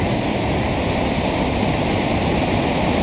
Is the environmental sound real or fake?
real